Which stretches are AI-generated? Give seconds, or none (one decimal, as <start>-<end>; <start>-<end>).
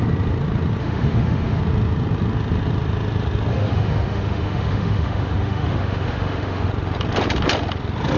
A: 0.8-1.6; 3.5-6.7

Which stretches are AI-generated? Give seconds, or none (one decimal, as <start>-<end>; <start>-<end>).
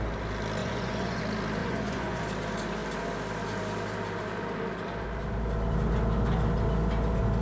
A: 0.6-1.2; 1.6-2.2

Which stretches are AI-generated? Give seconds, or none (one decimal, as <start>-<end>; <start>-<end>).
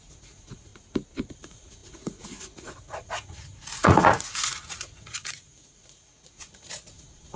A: 0.0-0.7; 1.4-7.4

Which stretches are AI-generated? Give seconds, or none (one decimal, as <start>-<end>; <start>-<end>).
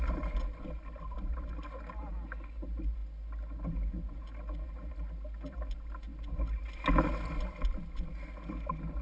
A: none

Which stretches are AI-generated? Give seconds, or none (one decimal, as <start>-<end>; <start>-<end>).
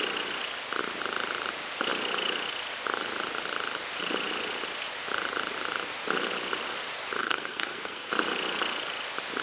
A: 7.2-8.1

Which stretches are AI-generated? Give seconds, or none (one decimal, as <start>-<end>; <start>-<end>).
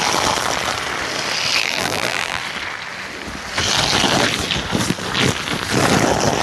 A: 1.6-2.4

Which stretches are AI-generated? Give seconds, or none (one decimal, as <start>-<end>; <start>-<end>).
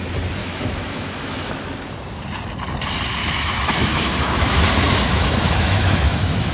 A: 0.4-1.5; 3.2-4.6; 5.1-6.5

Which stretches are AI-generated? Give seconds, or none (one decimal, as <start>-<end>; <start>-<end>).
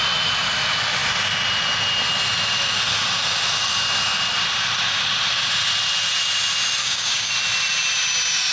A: 6.8-7.3